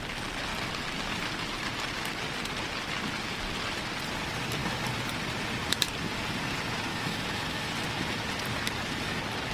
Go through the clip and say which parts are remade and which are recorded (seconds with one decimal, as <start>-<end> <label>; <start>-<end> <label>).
0.0-6.9 recorded; 6.9-7.7 remade; 7.7-9.5 recorded